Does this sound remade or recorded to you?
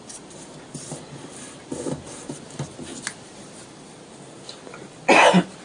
recorded